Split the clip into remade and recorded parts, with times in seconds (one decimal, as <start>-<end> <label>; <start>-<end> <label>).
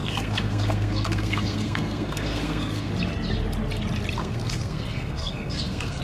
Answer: 0.0-2.9 remade; 2.9-4.2 recorded; 4.2-6.0 remade